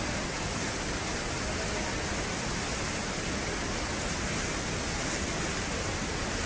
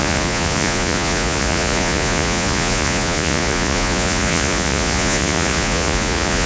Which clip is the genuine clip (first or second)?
first